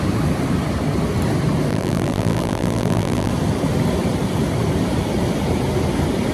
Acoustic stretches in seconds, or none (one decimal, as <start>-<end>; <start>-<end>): 0.0-1.7; 3.3-6.3

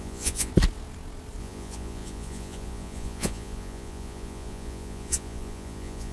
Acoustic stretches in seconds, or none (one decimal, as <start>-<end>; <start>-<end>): 0.5-1.4

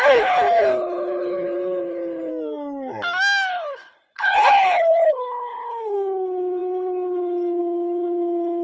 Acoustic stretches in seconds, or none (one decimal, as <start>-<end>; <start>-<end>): 2.3-3.5

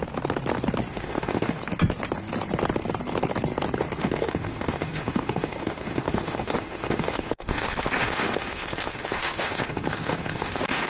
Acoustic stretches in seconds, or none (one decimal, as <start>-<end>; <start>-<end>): 0.0-0.9; 1.6-4.0

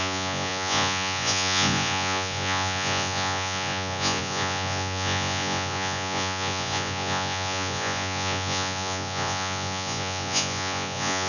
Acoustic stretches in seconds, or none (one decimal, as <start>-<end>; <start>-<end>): none

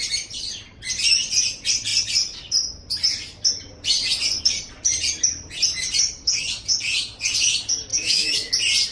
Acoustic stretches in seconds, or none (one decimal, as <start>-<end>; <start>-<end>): 0.0-7.9; 8.5-8.9